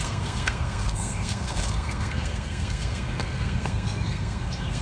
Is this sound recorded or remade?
remade